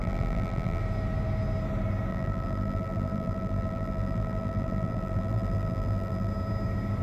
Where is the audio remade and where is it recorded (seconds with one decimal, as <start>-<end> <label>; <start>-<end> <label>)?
0.0-0.8 remade; 0.8-2.1 recorded; 2.1-6.3 remade; 6.3-7.0 recorded